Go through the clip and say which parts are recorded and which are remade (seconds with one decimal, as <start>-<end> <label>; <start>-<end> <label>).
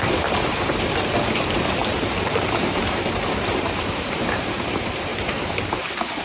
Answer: 0.0-6.2 remade